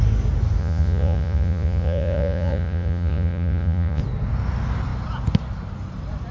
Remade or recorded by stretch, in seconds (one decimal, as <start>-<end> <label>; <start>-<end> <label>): 0.0-0.6 recorded; 0.6-4.0 remade; 4.0-6.3 recorded